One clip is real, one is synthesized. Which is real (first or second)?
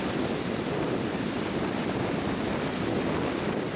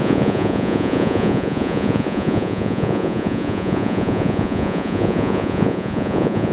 first